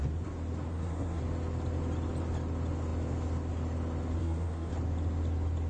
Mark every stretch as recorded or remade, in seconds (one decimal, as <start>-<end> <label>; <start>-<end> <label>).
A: 0.0-0.7 recorded; 0.7-1.2 remade; 1.2-4.2 recorded; 4.2-4.7 remade; 4.7-5.7 recorded